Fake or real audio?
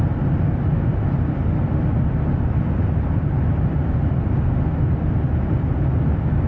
real